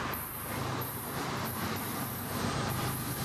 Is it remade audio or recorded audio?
remade